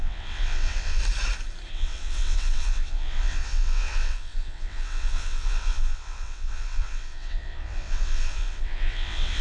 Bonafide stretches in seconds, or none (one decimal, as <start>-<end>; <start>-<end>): 1.0-1.7